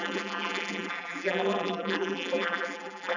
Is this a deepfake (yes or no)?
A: yes